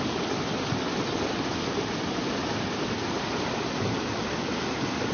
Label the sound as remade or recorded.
recorded